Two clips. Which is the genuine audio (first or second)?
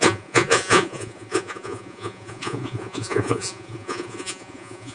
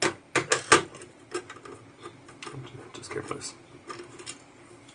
second